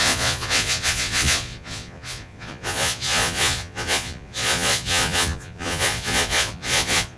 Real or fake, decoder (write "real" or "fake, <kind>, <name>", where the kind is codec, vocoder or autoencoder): fake, vocoder, Vocos